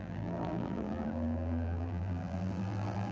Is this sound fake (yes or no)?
yes